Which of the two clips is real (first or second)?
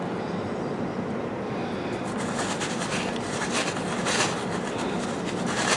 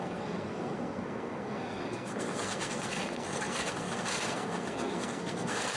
first